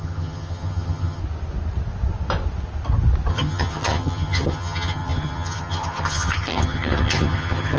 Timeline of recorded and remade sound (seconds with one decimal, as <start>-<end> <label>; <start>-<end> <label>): 0.0-1.2 remade; 1.2-3.3 recorded; 3.3-7.8 remade